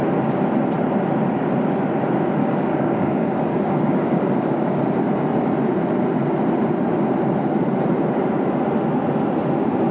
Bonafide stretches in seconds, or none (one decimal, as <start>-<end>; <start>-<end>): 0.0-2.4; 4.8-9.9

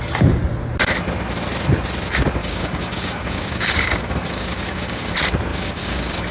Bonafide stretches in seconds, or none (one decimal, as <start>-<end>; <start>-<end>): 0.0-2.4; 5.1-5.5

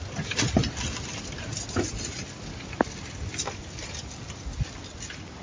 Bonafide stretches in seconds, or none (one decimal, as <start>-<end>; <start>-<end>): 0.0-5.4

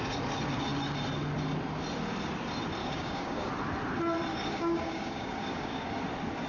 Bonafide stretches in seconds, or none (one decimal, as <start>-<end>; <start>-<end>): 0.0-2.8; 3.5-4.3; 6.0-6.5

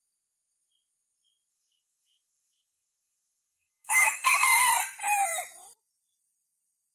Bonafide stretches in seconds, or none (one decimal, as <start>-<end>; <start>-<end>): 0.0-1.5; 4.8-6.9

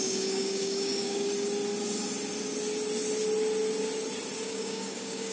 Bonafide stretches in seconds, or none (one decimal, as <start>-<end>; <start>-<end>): 1.3-4.5

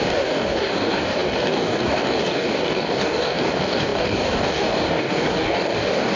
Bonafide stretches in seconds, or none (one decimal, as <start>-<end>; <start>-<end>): none

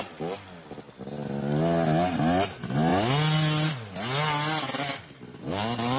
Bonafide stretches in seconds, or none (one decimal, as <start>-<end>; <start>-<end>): 0.0-6.0